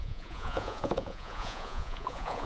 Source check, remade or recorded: remade